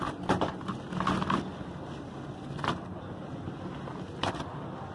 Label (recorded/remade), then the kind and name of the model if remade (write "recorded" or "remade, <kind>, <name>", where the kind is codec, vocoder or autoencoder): recorded